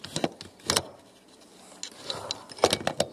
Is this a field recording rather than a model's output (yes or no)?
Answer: yes